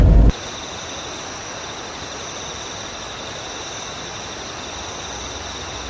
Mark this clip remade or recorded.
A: recorded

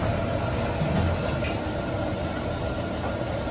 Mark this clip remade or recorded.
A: recorded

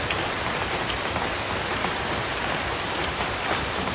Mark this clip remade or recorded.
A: remade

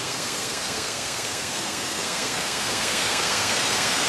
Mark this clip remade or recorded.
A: remade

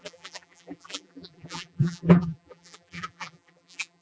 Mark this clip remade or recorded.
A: remade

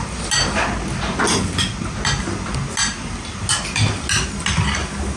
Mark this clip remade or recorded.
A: recorded